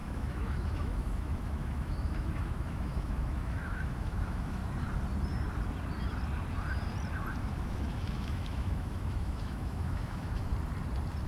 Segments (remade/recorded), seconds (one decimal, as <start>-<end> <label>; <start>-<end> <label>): 0.0-4.6 remade; 4.6-7.4 recorded; 7.4-10.5 remade; 10.5-11.3 recorded